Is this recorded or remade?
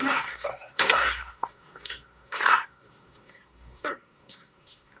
remade